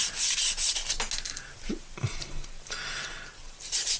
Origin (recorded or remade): recorded